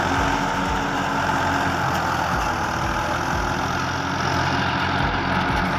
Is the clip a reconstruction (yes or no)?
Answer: no